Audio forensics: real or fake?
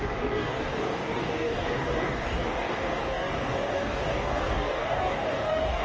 fake